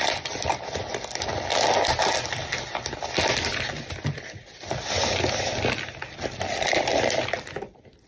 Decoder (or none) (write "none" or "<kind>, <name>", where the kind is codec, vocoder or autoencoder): none